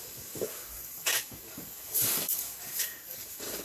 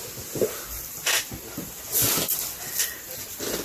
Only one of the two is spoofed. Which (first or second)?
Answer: first